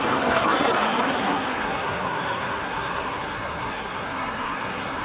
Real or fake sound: fake